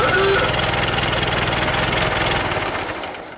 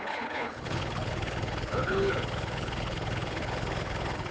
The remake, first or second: second